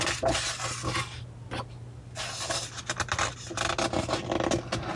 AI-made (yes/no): no